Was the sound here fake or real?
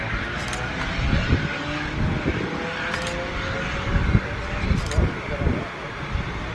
real